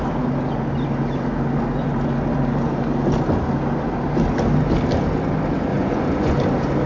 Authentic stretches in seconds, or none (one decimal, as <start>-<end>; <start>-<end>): 0.0-5.7; 6.4-6.9